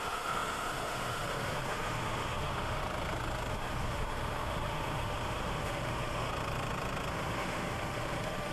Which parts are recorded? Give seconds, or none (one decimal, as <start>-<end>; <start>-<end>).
2.8-3.5; 6.3-7.1